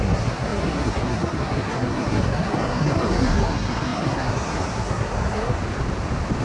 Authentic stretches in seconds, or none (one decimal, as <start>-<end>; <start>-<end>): 5.6-6.4